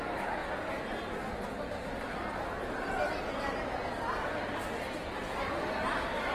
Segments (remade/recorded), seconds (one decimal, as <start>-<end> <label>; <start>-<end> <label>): 0.0-0.4 remade; 0.4-4.2 recorded; 4.2-6.3 remade